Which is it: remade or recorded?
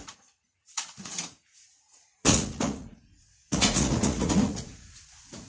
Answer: remade